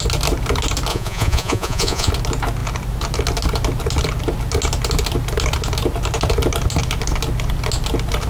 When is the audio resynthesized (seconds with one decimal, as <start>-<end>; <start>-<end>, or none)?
0.9-2.1